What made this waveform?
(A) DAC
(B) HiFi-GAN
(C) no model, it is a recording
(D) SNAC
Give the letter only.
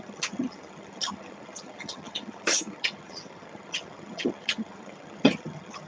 B